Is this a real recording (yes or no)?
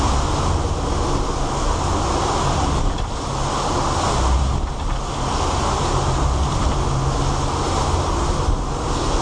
yes